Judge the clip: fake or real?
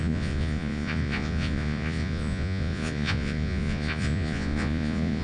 fake